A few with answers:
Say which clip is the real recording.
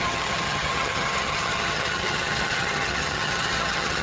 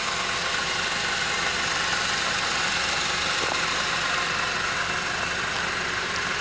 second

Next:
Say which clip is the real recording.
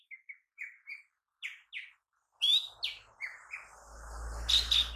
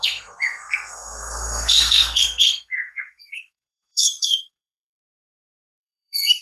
first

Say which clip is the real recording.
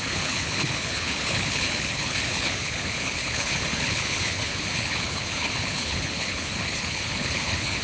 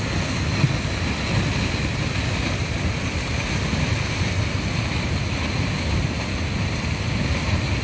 second